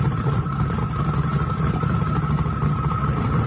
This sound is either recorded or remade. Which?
recorded